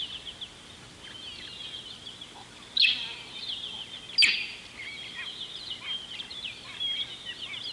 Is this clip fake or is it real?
real